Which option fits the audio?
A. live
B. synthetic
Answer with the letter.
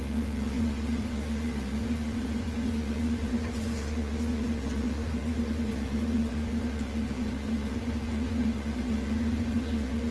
B